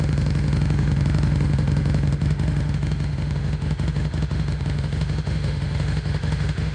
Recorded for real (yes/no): no